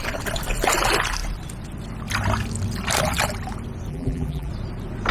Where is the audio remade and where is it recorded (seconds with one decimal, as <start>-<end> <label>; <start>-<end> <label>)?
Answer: 0.0-3.9 recorded; 3.9-4.5 remade; 4.5-5.1 recorded